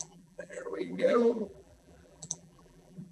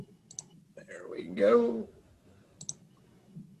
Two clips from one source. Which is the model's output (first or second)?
first